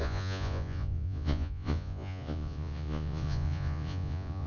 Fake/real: fake